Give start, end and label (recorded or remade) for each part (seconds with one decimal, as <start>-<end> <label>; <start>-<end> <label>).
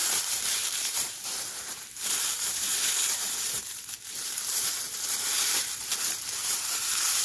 0.0-7.2 remade